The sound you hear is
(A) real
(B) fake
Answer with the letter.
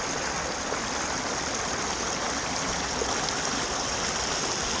A